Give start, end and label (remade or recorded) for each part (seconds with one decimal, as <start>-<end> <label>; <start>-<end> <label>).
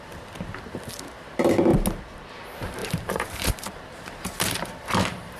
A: 0.0-2.8 recorded; 2.8-5.4 remade